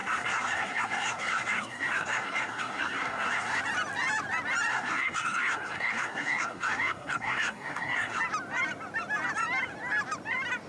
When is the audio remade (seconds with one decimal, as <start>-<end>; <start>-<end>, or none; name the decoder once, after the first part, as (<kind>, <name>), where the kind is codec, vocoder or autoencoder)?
0.0-3.6 (codec, SNAC); 4.7-8.2